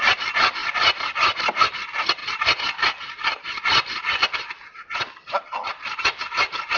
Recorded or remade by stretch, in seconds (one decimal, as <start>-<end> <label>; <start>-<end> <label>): 0.0-6.8 recorded